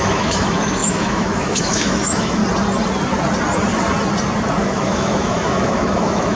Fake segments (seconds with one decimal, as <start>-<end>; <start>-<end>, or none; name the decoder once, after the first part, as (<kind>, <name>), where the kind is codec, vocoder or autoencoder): 0.0-2.4 (autoencoder, DAC-VAE); 4.6-6.3